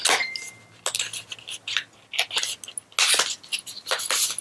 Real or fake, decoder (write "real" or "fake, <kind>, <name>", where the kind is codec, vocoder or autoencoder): real